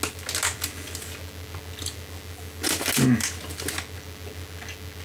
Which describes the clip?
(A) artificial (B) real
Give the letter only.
B